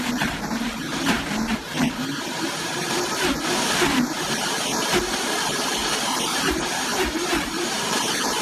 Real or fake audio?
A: fake